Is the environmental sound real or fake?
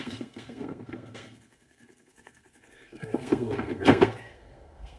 fake